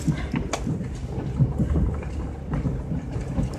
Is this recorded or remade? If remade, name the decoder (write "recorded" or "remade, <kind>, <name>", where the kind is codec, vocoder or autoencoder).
recorded